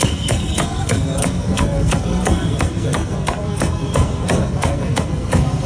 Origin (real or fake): fake